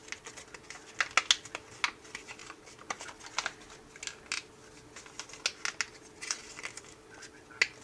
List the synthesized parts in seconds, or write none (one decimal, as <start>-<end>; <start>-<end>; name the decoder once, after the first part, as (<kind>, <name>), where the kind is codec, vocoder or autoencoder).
2.4-3.2 (vocoder, BigVGAN v2)